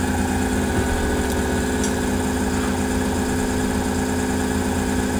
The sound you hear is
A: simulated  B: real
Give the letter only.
B